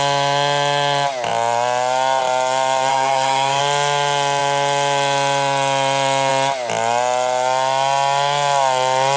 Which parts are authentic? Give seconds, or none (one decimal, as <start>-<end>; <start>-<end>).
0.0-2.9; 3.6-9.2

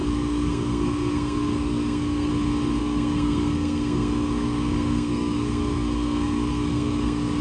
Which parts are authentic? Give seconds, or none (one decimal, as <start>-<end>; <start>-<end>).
2.3-2.8

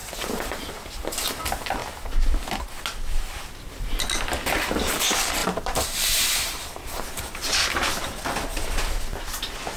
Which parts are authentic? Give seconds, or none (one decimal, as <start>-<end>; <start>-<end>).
0.7-5.4; 6.6-9.8